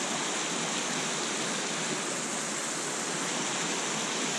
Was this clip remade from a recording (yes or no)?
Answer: no